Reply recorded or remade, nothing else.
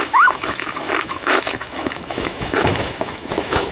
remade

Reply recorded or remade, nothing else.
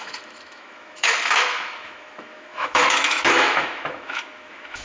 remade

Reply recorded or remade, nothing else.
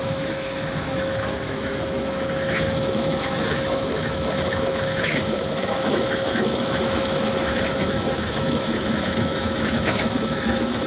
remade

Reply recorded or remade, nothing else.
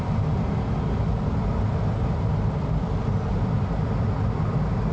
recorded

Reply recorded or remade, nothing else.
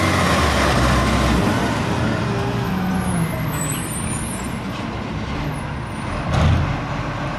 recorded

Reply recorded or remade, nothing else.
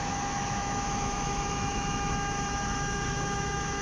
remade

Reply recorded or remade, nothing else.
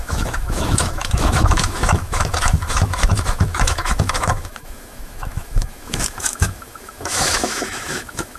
remade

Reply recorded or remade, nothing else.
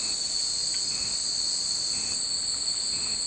recorded